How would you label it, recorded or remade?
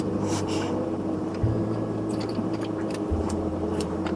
remade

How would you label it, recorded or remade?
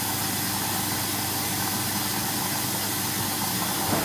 recorded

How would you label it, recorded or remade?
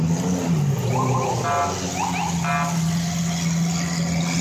recorded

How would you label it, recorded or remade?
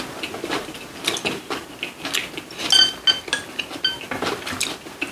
recorded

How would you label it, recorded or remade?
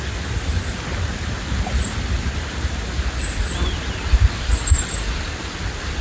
recorded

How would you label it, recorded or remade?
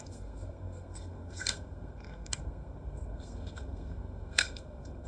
remade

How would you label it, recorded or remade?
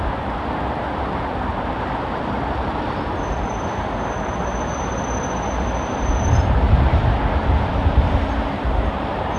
remade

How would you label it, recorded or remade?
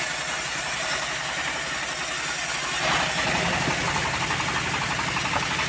recorded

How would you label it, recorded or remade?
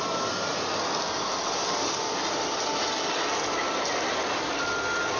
recorded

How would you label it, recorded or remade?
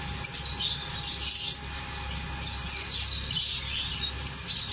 recorded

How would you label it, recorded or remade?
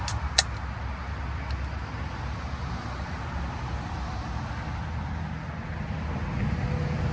recorded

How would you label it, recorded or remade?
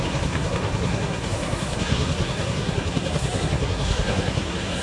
remade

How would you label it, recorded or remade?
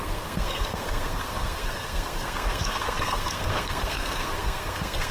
remade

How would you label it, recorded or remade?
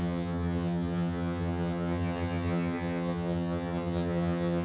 remade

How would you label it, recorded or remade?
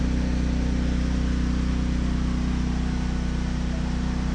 recorded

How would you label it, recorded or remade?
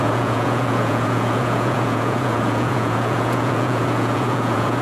remade